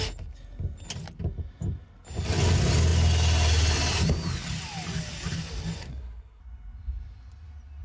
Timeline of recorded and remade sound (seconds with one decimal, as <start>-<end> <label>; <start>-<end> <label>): 0.0-5.9 recorded; 5.9-6.4 remade; 6.4-7.8 recorded